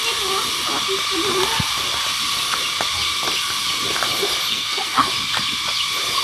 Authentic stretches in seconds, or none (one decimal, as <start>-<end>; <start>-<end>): 0.0-4.5; 5.1-6.2